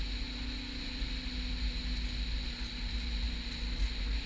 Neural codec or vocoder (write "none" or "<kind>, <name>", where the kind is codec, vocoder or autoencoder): none